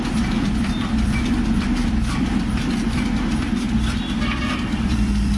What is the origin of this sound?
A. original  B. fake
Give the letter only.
B